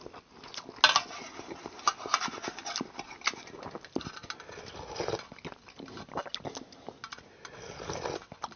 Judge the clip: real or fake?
real